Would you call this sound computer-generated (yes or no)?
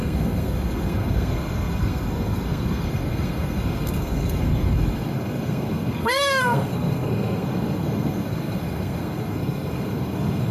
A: yes